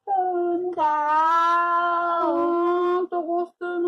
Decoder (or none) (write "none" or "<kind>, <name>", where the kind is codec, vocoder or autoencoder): vocoder, BigVGAN v2